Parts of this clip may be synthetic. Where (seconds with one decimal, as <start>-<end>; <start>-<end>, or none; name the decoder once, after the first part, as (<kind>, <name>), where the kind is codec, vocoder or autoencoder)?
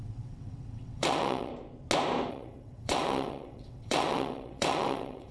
0.0-1.5 (vocoder, WaveNeXt); 2.3-5.3